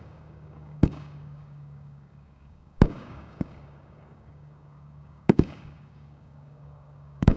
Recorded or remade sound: remade